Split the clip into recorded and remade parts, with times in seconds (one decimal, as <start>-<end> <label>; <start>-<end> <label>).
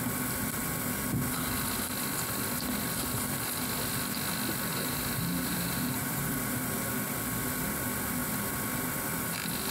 0.0-4.7 recorded; 4.7-6.3 remade; 6.3-9.7 recorded